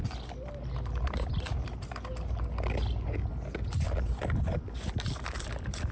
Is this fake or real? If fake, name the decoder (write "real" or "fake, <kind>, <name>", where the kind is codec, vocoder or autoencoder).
real